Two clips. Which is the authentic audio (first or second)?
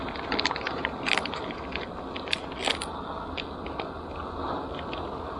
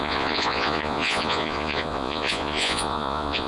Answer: first